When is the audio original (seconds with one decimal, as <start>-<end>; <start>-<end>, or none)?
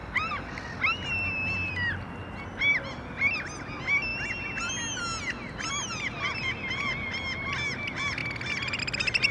0.0-9.3